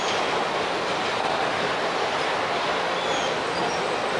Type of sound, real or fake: real